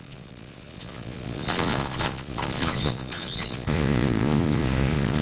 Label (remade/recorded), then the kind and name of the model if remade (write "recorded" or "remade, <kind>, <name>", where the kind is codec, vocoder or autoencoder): remade, vocoder, Vocos